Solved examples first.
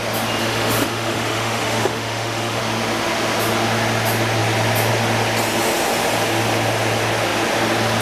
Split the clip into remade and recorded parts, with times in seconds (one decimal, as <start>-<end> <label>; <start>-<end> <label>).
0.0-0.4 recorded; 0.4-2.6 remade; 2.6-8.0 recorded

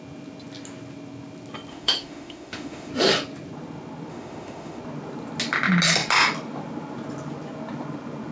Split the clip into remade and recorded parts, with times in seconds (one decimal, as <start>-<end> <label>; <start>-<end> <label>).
0.0-1.7 recorded; 1.7-2.9 remade; 2.9-4.1 recorded; 4.1-4.8 remade; 4.8-8.3 recorded

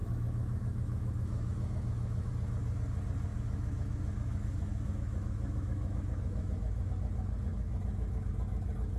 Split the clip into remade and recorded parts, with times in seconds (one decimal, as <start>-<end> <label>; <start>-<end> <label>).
0.0-2.3 remade; 2.3-3.3 recorded; 3.3-6.9 remade; 6.9-7.5 recorded; 7.5-8.3 remade; 8.3-9.0 recorded

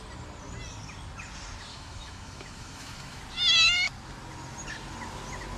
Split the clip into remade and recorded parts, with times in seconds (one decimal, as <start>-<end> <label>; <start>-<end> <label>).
0.0-1.7 recorded; 1.7-3.2 remade; 3.2-5.6 recorded